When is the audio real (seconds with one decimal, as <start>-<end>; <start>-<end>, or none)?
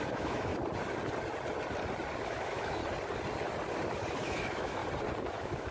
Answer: 0.5-2.2; 2.8-4.2; 4.8-5.3